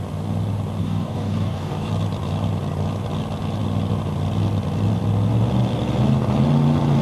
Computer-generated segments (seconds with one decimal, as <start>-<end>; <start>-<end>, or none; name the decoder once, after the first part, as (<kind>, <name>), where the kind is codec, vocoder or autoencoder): 0.8-1.9 (codec, DAC)